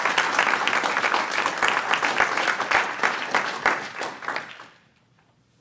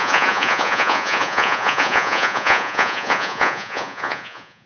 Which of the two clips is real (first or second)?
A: first